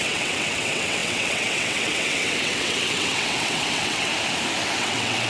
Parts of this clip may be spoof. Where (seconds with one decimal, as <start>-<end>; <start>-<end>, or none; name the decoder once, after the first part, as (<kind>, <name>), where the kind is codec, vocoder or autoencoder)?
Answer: 0.0-4.1 (vocoder, WaveNeXt); 4.8-5.3